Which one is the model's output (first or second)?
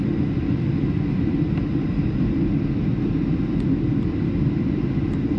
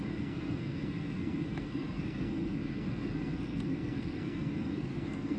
second